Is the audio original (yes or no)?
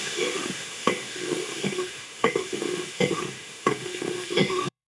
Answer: no